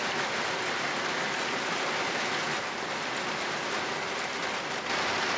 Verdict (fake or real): real